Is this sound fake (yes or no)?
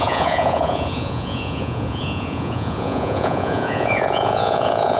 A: yes